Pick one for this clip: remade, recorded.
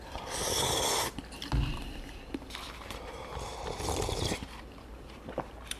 remade